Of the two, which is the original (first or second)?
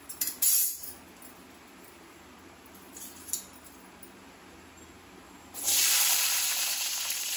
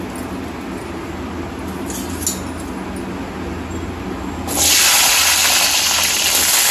second